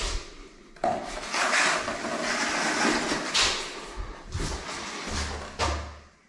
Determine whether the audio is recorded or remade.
recorded